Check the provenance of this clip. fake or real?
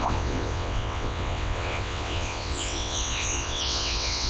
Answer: fake